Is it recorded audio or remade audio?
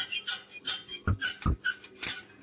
recorded